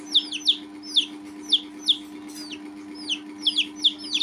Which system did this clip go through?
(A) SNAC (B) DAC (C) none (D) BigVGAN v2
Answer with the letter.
C